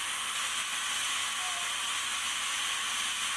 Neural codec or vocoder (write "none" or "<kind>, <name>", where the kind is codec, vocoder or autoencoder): none